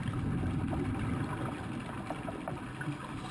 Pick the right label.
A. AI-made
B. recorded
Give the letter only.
B